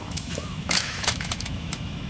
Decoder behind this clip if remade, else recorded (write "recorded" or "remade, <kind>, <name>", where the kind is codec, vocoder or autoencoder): remade, autoencoder, DAC-VAE